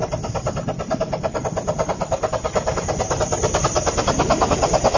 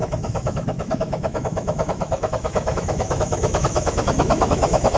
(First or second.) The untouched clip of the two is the first